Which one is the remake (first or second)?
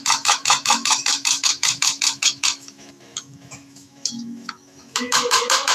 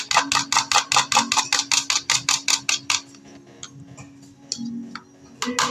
first